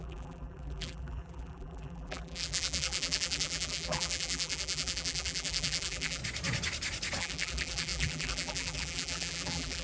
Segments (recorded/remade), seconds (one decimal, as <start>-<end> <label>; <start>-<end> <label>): 0.0-6.2 remade; 6.2-7.2 recorded; 7.2-9.8 remade

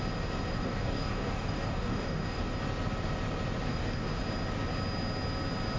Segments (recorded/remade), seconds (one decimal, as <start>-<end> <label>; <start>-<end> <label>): 0.0-0.5 recorded; 0.5-2.4 remade; 2.4-3.7 recorded; 3.7-4.2 remade; 4.2-5.8 recorded

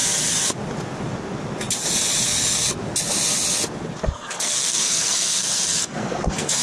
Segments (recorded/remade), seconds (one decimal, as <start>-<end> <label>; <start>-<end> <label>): 0.0-4.0 recorded; 4.0-6.6 remade

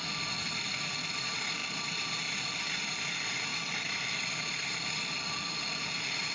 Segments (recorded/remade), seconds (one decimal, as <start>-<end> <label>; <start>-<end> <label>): 0.0-6.3 recorded